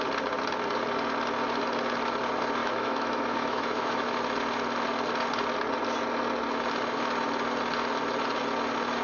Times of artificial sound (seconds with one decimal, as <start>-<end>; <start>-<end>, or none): 2.6-4.1